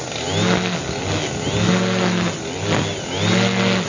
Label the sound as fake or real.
real